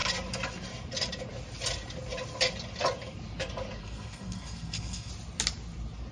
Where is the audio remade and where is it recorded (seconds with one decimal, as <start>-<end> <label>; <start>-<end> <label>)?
0.0-3.8 recorded; 3.8-5.1 remade; 5.1-6.1 recorded